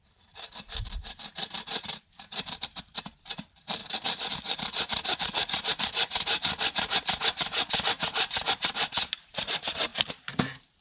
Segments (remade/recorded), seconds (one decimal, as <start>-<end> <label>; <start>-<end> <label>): 0.0-3.8 remade; 3.8-4.3 recorded; 4.3-10.8 remade